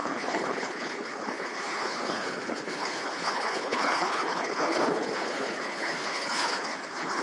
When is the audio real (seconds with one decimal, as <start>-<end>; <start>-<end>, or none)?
none